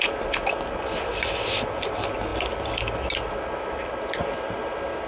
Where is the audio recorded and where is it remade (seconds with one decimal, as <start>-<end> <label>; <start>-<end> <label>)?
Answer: 0.0-5.1 recorded

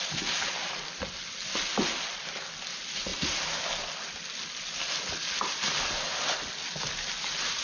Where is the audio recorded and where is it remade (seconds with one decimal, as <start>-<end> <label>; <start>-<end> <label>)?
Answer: 0.0-7.6 recorded